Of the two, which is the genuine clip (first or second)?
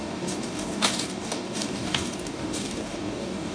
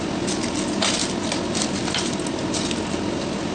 second